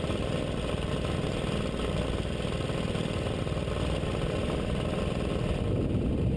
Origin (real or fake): real